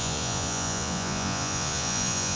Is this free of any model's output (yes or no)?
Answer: no